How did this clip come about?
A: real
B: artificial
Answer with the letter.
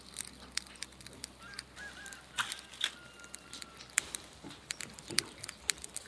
A